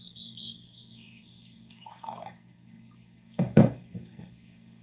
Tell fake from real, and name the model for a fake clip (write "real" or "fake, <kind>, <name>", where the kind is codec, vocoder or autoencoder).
fake, codec, SNAC